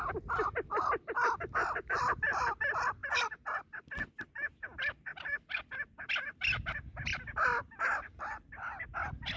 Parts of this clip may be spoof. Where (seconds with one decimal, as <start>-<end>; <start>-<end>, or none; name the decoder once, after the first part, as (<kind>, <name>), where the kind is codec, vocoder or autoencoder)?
none